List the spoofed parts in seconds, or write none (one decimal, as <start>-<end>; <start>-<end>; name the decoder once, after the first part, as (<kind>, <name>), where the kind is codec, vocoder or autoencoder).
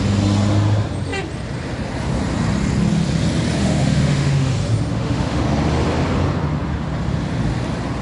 3.6-4.5 (autoencoder, DAC-VAE); 4.9-5.4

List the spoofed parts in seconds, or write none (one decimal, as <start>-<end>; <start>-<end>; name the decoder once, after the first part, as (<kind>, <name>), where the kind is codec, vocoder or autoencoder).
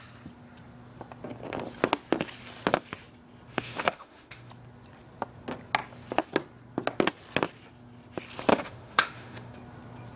3.5-4.5 (autoencoder, DAC-VAE); 8.5-9.5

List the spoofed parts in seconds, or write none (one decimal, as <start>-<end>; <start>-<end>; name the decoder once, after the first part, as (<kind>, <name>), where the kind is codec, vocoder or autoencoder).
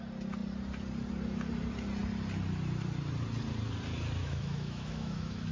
4.2-5.5 (autoencoder, DAC-VAE)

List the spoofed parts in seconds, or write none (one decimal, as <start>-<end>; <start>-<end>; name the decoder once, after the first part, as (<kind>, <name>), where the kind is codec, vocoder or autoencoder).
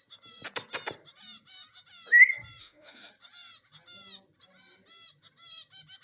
2.6-3.1 (autoencoder, DAC-VAE)